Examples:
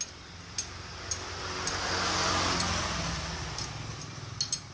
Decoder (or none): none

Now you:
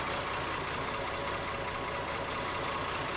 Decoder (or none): none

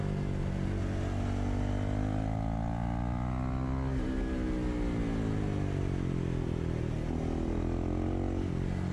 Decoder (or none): none